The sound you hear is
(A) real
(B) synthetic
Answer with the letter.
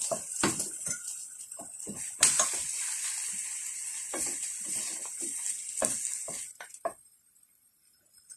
A